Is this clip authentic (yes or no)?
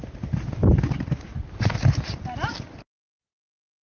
yes